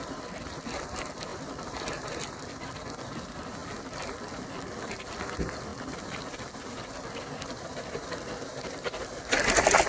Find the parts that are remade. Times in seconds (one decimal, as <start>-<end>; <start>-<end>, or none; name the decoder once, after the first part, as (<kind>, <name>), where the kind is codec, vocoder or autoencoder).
none